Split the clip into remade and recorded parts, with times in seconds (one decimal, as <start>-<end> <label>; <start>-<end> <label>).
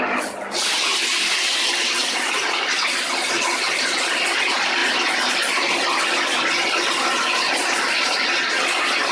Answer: 0.0-9.1 recorded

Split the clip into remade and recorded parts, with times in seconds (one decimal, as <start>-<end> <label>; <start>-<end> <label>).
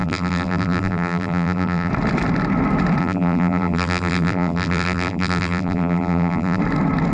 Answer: 0.0-1.9 remade; 1.9-3.0 recorded; 3.0-6.6 remade; 6.6-7.1 recorded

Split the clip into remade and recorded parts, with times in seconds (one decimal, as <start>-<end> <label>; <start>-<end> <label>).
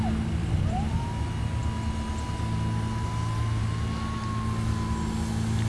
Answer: 0.0-0.4 recorded; 0.4-1.1 remade; 1.1-5.7 recorded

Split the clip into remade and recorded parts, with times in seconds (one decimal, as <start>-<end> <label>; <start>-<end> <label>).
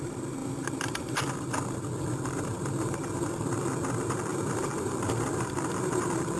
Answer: 0.0-0.4 recorded; 0.4-3.4 remade; 3.4-4.3 recorded; 4.3-5.0 remade; 5.0-6.4 recorded